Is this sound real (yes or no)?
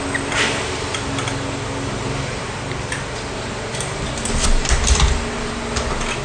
yes